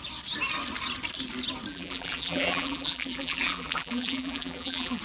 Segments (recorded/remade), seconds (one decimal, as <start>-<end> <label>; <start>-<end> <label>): 0.0-1.7 recorded; 1.7-5.0 remade